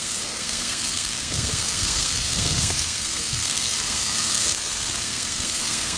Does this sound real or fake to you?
fake